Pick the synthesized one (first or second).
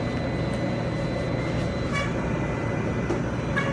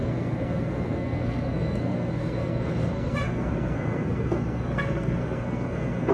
second